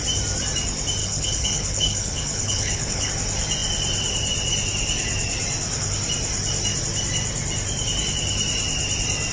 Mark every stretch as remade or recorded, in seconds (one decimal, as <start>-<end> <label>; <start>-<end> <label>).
0.0-1.0 recorded; 1.0-3.1 remade; 3.1-9.3 recorded